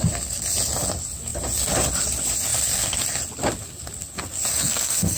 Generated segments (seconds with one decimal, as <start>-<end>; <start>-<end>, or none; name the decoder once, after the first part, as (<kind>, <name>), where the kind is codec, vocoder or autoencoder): 4.5-5.2 (codec, SNAC)